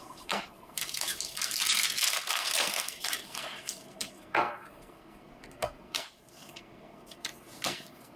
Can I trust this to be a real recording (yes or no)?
no